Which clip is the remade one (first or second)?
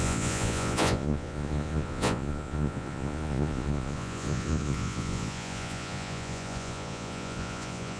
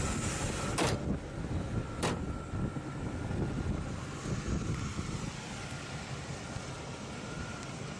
first